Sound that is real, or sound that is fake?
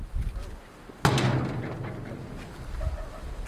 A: real